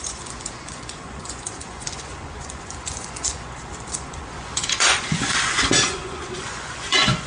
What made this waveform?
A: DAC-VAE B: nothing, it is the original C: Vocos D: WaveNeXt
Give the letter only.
C